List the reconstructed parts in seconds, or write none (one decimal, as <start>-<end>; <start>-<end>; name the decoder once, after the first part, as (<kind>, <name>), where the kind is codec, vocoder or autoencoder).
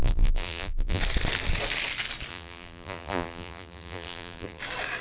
0.0-1.0 (vocoder, BigVGAN v2); 2.3-4.6